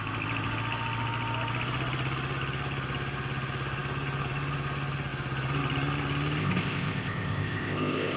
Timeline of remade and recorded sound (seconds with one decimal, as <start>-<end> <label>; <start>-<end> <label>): 0.0-6.4 recorded; 6.4-8.2 remade